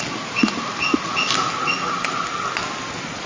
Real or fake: real